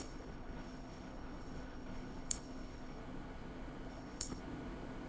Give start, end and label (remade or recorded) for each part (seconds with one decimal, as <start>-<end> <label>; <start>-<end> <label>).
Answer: 0.0-3.0 remade; 3.0-3.9 recorded; 3.9-4.4 remade; 4.4-5.1 recorded